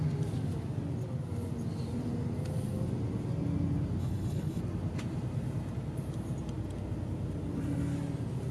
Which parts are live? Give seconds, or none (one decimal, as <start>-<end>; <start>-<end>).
0.0-4.0; 4.6-8.5